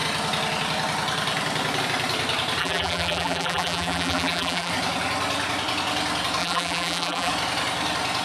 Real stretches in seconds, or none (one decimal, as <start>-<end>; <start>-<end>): 0.0-2.6; 4.7-6.4; 7.3-8.2